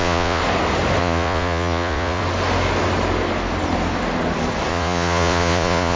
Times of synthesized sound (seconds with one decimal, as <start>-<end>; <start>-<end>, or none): 0.0-0.4; 1.0-2.2; 4.7-6.0